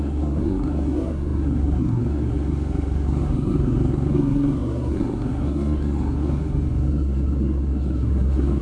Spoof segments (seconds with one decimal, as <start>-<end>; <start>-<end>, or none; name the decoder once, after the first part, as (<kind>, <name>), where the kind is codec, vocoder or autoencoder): 0.0-8.6 (codec, SNAC)

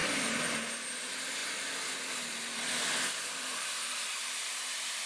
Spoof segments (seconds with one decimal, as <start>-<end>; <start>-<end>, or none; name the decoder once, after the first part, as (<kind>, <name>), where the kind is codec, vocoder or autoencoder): 0.0-0.7 (vocoder, BigVGAN v2); 1.4-4.5

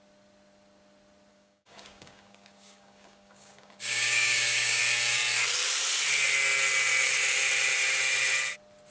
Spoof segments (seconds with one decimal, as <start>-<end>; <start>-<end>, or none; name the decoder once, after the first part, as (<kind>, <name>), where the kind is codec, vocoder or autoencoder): 1.3-4.8 (codec, DAC)

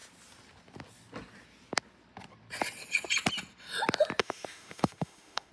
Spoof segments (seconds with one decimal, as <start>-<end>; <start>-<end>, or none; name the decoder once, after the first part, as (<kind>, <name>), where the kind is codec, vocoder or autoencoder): 4.2-5.5 (autoencoder, DAC-VAE)

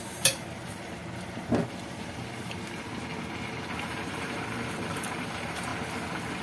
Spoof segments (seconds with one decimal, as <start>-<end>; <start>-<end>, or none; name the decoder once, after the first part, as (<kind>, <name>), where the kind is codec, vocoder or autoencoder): 0.0-1.0 (vocoder, BigVGAN v2); 3.8-5.7

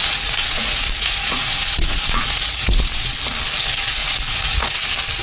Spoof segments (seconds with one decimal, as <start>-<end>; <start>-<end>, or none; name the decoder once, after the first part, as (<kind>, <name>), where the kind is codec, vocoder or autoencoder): 0.0-3.1 (vocoder, Vocos); 4.0-4.7